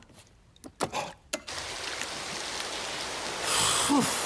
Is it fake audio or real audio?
real